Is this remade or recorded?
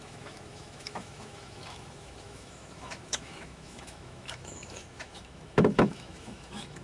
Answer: remade